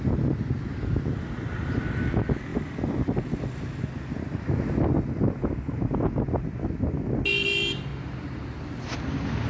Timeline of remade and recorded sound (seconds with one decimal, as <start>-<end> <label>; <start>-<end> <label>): 0.0-9.5 recorded